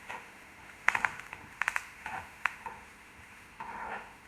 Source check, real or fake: fake